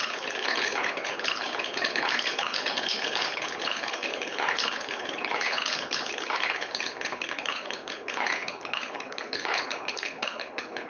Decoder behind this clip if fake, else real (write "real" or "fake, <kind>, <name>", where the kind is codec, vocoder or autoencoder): fake, codec, HILCodec